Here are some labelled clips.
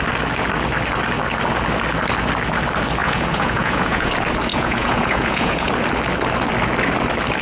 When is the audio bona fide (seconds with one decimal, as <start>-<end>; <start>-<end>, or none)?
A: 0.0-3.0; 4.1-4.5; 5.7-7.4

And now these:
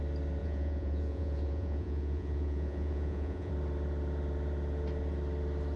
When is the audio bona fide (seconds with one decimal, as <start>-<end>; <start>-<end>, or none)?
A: 0.0-0.4; 3.5-5.8

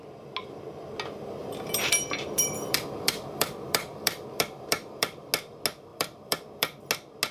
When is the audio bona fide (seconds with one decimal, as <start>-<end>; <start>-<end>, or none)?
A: 0.0-1.4; 5.3-5.9; 6.8-7.3

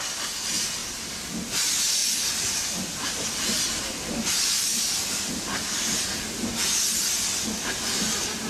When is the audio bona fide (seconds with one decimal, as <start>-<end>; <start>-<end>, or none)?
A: 0.0-0.8; 1.4-2.0; 6.9-8.5